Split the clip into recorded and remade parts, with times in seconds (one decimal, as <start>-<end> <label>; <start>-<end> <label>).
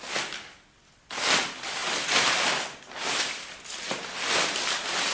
0.0-5.1 recorded